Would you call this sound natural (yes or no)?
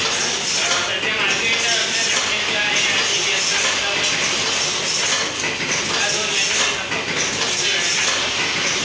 yes